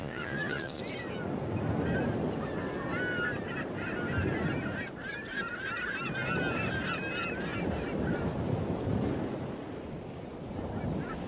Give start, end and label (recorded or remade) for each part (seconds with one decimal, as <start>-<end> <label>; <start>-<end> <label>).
0.0-0.8 remade; 0.8-11.3 recorded